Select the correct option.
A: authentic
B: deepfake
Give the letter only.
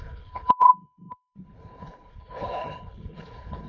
B